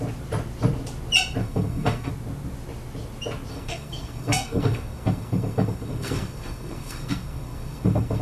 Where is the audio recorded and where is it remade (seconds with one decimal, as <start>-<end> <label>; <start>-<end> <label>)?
0.0-1.4 recorded; 1.4-2.1 remade; 2.1-3.5 recorded; 3.5-8.2 remade